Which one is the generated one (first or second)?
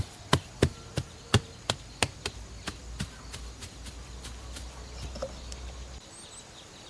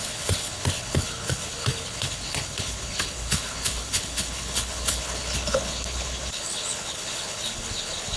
second